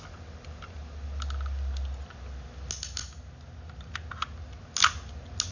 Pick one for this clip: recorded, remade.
recorded